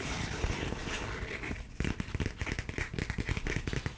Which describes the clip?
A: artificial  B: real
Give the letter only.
B